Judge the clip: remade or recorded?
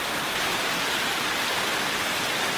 recorded